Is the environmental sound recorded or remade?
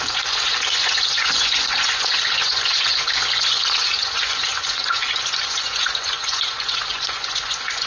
remade